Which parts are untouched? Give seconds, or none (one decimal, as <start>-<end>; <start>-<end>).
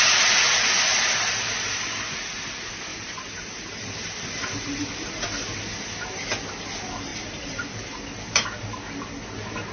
0.0-2.9; 4.9-7.1; 8.0-9.7